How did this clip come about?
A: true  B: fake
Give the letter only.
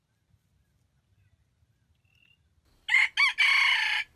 A